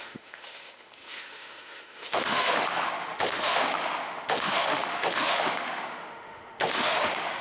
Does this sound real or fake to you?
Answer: fake